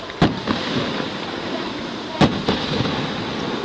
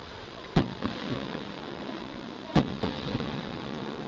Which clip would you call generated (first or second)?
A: second